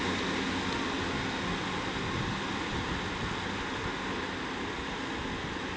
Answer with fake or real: real